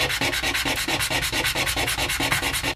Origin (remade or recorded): recorded